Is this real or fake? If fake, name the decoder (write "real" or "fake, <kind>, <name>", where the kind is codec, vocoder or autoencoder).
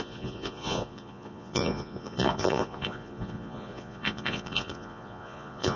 fake, vocoder, Vocos